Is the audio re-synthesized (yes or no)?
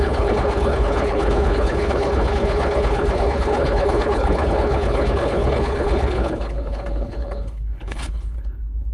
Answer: yes